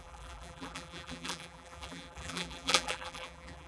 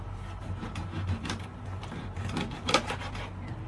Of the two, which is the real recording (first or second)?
second